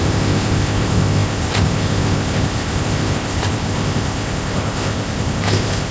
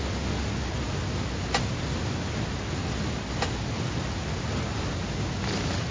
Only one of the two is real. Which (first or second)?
second